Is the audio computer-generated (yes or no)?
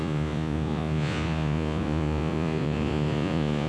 yes